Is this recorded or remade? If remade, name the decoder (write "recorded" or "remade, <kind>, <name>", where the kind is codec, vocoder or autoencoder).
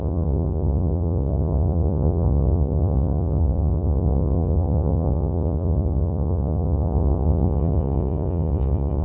remade, vocoder, Vocos